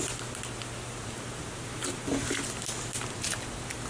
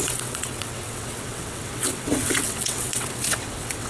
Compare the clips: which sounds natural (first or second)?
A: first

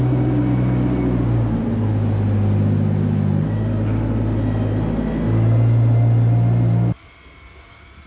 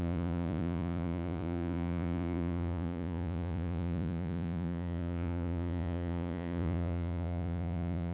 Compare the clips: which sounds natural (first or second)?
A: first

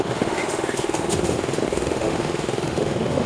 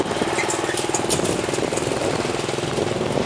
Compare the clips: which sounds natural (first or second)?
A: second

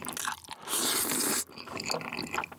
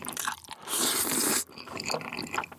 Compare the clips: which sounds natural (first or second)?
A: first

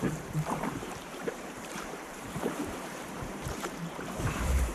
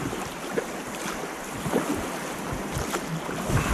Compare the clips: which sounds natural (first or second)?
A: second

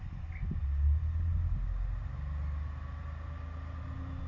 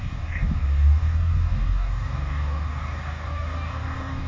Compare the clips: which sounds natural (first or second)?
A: first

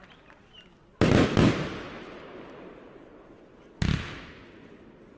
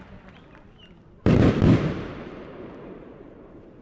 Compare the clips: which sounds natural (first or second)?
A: first